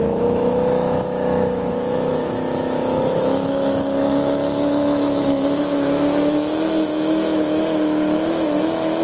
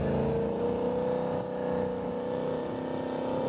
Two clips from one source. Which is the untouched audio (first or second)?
second